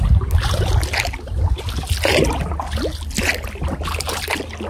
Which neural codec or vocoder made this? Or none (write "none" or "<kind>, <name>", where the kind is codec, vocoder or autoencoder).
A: none